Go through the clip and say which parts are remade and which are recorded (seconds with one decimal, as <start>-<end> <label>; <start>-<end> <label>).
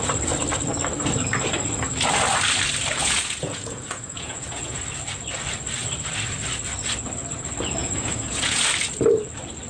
0.0-3.0 recorded; 3.0-4.8 remade; 4.8-7.8 recorded; 7.8-8.6 remade; 8.6-9.7 recorded